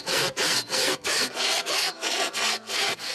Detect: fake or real fake